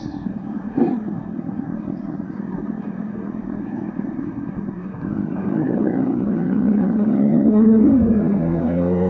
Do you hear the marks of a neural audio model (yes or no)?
yes